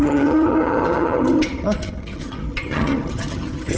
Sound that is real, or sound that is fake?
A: fake